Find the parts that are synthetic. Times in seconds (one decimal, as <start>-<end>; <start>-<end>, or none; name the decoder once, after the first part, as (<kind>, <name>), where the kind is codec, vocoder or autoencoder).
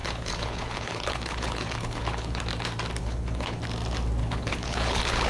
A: 0.0-2.4 (codec, HILCodec); 3.0-3.6; 4.2-5.3